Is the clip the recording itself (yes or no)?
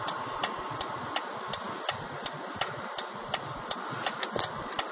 yes